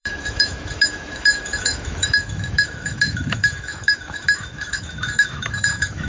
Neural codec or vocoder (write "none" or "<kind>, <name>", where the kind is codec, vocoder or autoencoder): autoencoder, DAC-VAE